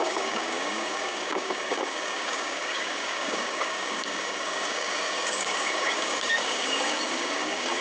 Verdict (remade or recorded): remade